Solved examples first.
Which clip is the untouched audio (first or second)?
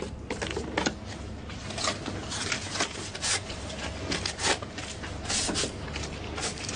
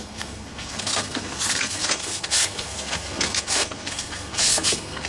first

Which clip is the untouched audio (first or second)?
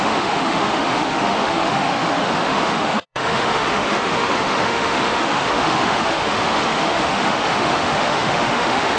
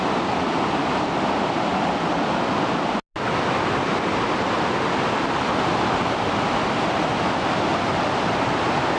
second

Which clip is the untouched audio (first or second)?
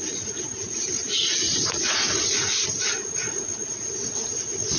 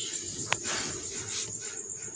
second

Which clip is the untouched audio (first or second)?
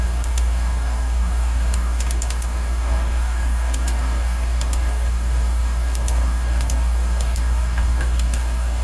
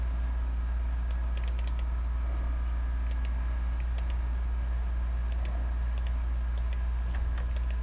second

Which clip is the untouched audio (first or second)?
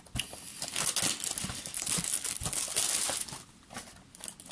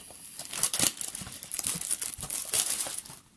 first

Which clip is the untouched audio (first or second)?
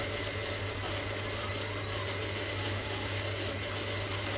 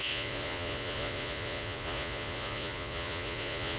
first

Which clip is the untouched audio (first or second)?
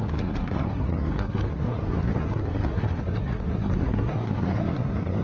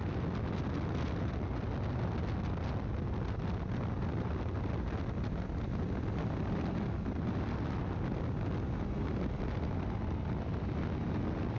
second